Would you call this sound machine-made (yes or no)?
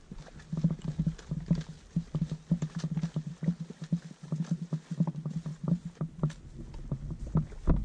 no